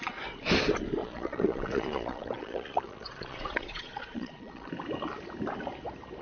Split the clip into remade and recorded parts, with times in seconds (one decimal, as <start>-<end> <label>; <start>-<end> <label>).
0.0-1.0 recorded; 1.0-4.7 remade; 4.7-6.2 recorded